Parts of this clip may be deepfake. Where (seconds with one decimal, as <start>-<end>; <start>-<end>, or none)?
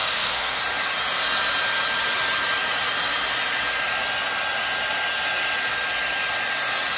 0.0-0.6